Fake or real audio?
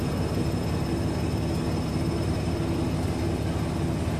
real